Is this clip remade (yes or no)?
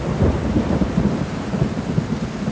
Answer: no